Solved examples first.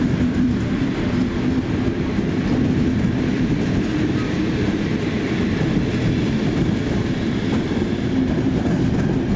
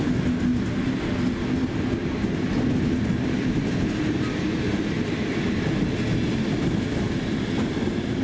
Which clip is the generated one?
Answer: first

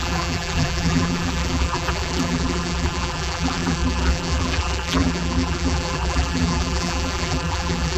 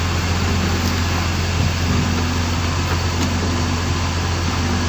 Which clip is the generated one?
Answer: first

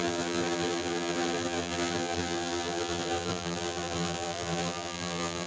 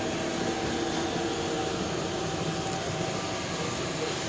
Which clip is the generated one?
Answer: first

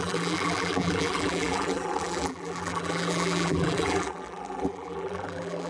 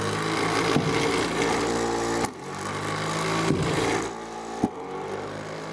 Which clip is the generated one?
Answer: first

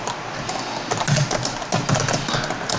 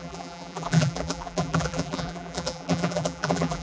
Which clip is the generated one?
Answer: second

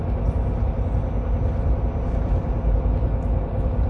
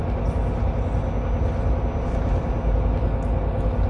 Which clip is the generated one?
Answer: first